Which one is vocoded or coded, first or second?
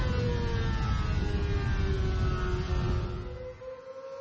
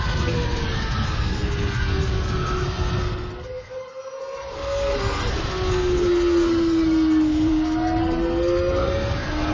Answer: second